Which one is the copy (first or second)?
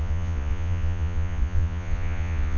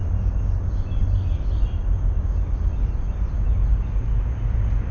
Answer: first